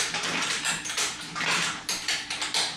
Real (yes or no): no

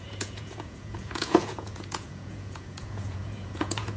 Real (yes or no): no